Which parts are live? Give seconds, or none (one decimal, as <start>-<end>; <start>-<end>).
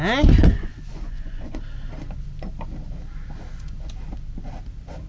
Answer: 0.0-0.4; 1.6-5.1